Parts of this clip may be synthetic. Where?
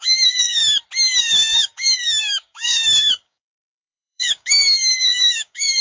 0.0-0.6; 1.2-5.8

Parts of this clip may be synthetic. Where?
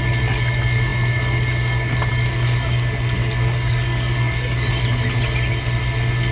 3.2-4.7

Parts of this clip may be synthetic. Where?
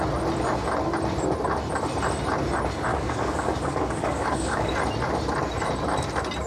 2.9-4.7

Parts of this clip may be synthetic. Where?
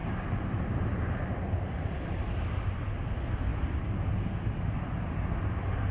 none